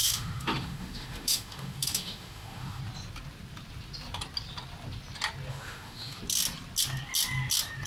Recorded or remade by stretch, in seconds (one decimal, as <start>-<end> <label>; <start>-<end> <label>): 0.0-2.8 remade; 2.8-5.5 recorded; 5.5-6.2 remade; 6.2-7.9 recorded

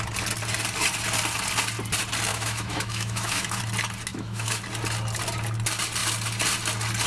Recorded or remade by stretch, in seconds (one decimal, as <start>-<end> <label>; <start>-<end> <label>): 0.0-2.3 recorded; 2.3-3.6 remade; 3.6-4.1 recorded; 4.1-4.6 remade; 4.6-7.1 recorded

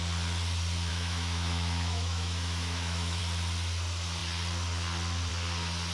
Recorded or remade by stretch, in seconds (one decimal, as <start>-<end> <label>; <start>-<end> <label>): 0.0-0.9 recorded; 0.9-3.2 remade; 3.2-5.9 recorded

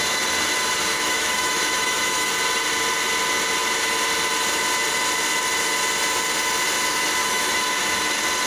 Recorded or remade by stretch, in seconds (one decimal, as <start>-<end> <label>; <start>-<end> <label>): 0.0-0.9 recorded; 0.9-2.3 remade; 2.3-7.2 recorded; 7.2-7.7 remade; 7.7-8.5 recorded

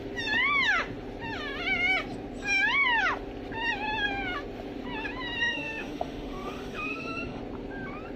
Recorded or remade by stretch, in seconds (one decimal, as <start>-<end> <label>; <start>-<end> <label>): 0.0-5.4 recorded; 5.4-7.4 remade; 7.4-8.2 recorded

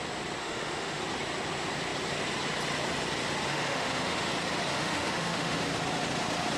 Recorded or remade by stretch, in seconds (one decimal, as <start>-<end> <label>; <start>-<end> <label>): 0.0-0.4 recorded; 0.4-1.0 remade; 1.0-3.5 recorded; 3.5-4.3 remade; 4.3-4.7 recorded; 4.7-5.6 remade; 5.6-6.6 recorded

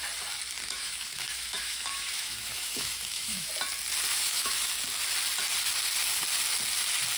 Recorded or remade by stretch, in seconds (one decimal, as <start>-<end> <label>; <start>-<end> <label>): 0.0-0.6 recorded; 0.6-3.5 remade; 3.5-4.1 recorded; 4.1-4.7 remade; 4.7-7.2 recorded